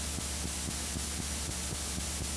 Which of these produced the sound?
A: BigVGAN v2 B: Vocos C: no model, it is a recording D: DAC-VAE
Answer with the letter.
C